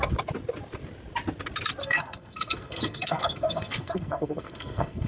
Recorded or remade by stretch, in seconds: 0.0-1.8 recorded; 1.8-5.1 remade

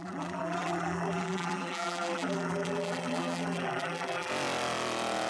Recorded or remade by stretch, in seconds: 0.0-4.3 remade; 4.3-5.3 recorded

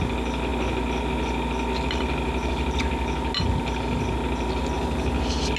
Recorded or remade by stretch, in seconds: 0.0-5.6 recorded

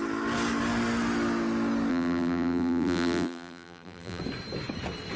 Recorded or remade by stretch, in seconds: 0.0-1.9 recorded; 1.9-4.2 remade; 4.2-5.2 recorded

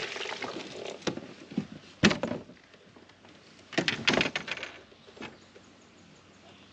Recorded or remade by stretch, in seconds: 0.0-6.7 recorded

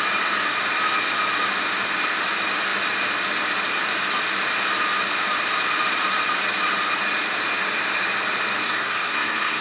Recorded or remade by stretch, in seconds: 0.0-8.6 recorded; 8.6-9.6 remade

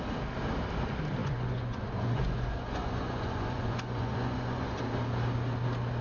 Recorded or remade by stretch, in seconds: 0.0-1.2 recorded; 1.2-4.8 remade; 4.8-6.0 recorded